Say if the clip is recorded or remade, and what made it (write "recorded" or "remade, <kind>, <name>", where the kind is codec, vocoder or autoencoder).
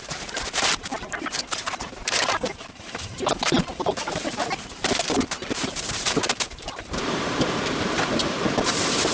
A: remade, vocoder, BigVGAN v2